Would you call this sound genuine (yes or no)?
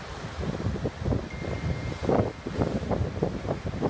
yes